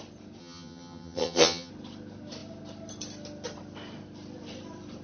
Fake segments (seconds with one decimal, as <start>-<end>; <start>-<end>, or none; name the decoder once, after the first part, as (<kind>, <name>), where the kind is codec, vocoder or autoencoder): 0.4-1.7 (vocoder, HiFi-GAN)